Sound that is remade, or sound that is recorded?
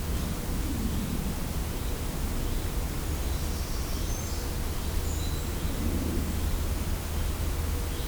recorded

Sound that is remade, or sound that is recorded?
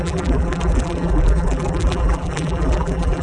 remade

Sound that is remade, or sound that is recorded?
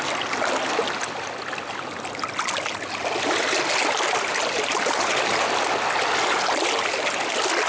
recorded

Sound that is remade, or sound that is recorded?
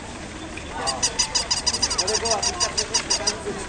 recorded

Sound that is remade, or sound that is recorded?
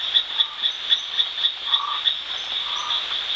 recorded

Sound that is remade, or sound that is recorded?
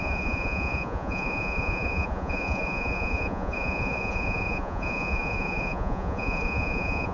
remade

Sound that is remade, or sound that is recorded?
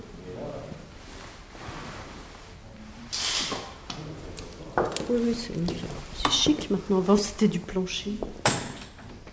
recorded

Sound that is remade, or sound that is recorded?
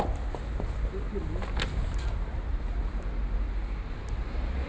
recorded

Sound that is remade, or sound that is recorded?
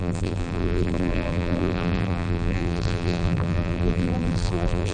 remade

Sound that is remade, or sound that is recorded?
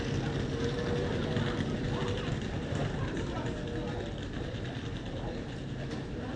recorded